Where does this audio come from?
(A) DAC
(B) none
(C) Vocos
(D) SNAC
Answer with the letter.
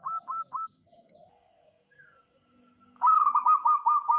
A